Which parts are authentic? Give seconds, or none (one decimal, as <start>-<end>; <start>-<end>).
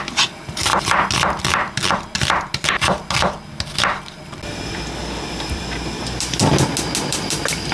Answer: 0.7-5.3; 6.4-7.1